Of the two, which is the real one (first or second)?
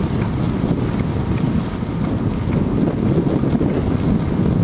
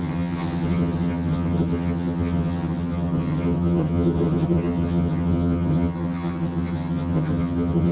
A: first